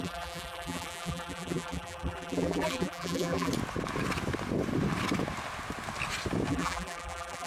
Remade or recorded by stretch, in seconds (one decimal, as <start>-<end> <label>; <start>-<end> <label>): 0.0-3.5 remade; 3.5-6.5 recorded; 6.5-7.5 remade